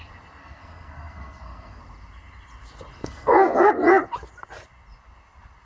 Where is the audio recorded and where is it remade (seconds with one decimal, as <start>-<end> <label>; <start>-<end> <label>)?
0.0-0.4 recorded; 0.4-1.8 remade; 1.8-3.0 recorded; 3.0-3.7 remade; 3.7-5.7 recorded